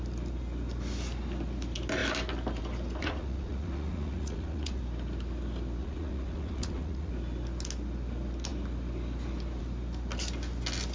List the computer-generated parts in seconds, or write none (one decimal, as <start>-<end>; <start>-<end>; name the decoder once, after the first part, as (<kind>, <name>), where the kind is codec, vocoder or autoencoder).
3.0-4.8 (vocoder, Vocos); 5.8-7.1